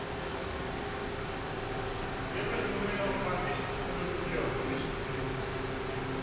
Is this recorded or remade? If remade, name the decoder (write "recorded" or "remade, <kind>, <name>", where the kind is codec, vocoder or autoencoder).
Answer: recorded